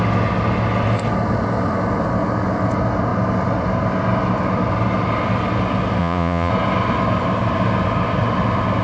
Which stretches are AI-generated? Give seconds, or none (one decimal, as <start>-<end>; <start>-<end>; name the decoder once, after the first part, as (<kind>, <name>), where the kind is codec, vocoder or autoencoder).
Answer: 6.0-6.5 (vocoder, Vocos)